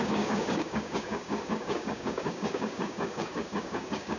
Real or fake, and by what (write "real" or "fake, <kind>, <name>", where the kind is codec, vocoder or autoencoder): fake, codec, DAC